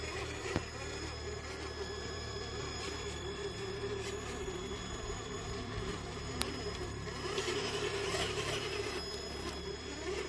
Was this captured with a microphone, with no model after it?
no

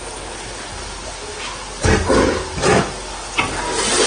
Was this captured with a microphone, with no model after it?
yes